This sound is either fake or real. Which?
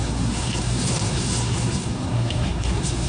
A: fake